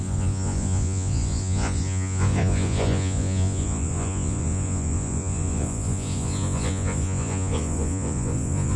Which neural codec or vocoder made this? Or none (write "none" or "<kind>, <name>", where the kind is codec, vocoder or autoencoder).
vocoder, Vocos